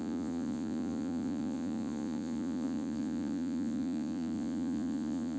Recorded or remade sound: remade